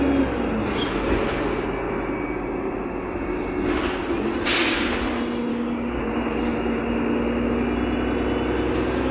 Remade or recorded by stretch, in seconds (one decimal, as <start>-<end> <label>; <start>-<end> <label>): 0.0-5.5 recorded; 5.5-6.0 remade; 6.0-9.1 recorded

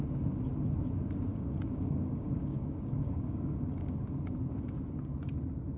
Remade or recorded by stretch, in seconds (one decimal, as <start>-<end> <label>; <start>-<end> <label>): 0.0-1.3 recorded; 1.3-4.2 remade; 4.2-5.8 recorded

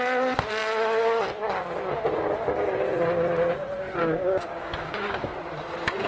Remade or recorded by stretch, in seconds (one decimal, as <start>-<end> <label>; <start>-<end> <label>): 0.0-4.0 recorded; 4.0-5.3 remade; 5.3-6.1 recorded